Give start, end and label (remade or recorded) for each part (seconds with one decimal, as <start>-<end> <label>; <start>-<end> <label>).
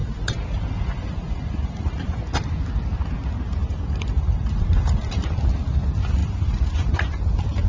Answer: 0.0-2.5 remade; 2.5-3.6 recorded; 3.6-5.4 remade; 5.4-6.2 recorded; 6.2-7.1 remade; 7.1-7.7 recorded